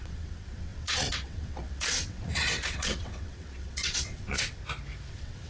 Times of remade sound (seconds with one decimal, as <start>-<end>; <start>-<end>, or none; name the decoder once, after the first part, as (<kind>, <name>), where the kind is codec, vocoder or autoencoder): 0.0-4.6 (vocoder, WaveNeXt); 5.1-5.5